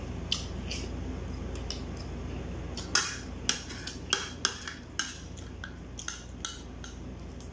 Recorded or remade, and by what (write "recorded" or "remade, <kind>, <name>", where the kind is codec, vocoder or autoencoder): recorded